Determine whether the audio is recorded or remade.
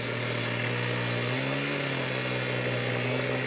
recorded